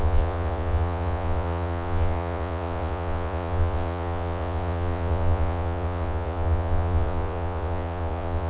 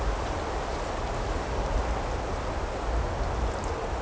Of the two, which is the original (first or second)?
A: second